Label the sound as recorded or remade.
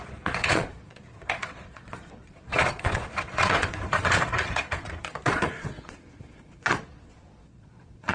remade